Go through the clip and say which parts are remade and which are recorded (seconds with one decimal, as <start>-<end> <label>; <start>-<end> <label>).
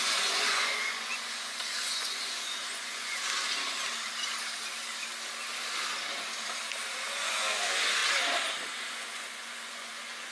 0.0-3.2 remade; 3.2-7.1 recorded; 7.1-8.0 remade; 8.0-8.9 recorded; 8.9-10.3 remade